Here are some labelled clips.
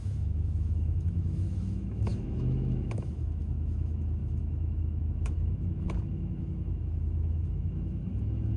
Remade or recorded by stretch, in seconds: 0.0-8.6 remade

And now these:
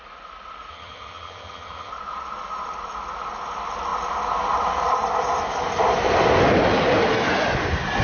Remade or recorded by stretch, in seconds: 0.0-0.7 recorded; 0.7-1.9 remade; 1.9-8.0 recorded

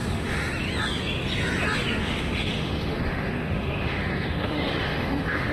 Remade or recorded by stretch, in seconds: 0.0-0.5 remade; 0.5-2.0 recorded; 2.0-5.5 remade

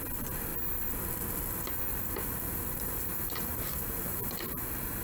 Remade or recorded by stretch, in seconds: 0.0-1.9 recorded; 1.9-5.0 remade

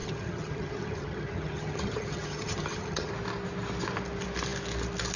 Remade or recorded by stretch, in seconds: 0.0-3.1 remade; 3.1-5.2 recorded

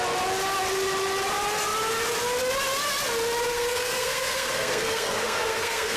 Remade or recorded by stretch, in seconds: 0.0-3.5 recorded; 3.5-6.0 remade